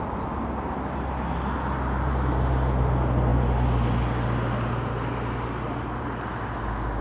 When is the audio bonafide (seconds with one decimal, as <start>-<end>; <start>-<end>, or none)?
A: 0.0-7.0